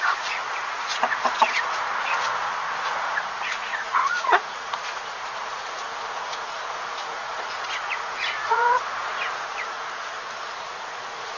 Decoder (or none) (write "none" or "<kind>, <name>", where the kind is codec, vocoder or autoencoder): vocoder, Vocos